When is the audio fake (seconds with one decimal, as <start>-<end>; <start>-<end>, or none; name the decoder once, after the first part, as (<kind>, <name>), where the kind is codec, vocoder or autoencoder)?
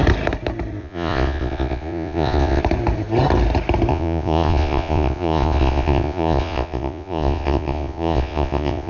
0.8-2.6 (vocoder, Vocos); 3.9-8.9